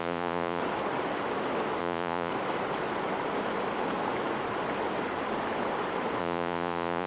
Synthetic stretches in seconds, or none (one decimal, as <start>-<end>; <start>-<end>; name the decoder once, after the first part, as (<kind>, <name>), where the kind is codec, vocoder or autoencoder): 0.0-0.6 (vocoder, Vocos); 1.8-2.3; 6.2-7.1